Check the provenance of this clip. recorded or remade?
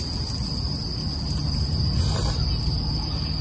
recorded